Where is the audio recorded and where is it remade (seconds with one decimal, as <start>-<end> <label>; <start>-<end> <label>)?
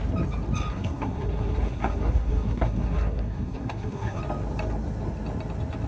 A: 0.0-0.7 recorded; 0.7-4.2 remade; 4.2-5.9 recorded